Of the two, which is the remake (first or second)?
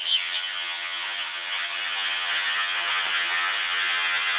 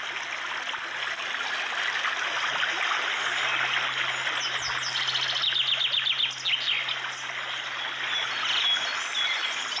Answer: first